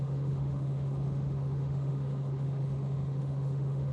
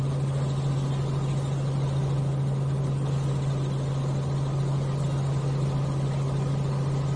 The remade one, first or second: first